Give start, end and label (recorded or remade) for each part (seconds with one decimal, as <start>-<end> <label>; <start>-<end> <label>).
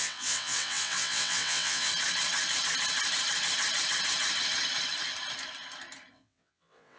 0.0-1.9 remade; 1.9-6.1 recorded; 6.1-7.0 remade